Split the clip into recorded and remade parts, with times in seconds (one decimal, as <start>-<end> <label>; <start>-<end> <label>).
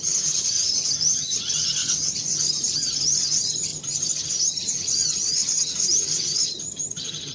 0.0-7.3 remade